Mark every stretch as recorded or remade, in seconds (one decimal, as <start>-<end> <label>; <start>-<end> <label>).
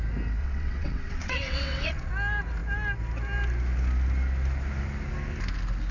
0.0-0.4 recorded; 0.4-2.1 remade; 2.1-5.9 recorded